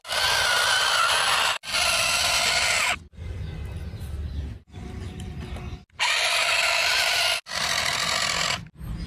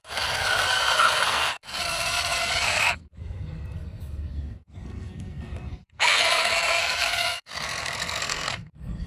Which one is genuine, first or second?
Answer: first